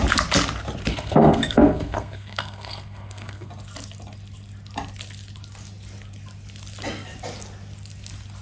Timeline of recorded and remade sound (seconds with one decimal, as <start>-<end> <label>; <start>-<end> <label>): 0.0-0.9 recorded; 0.9-3.5 remade; 3.5-8.4 recorded